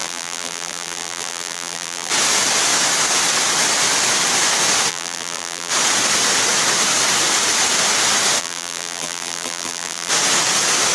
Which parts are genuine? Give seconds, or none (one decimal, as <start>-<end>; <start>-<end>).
2.1-4.9; 5.7-8.4; 10.1-10.9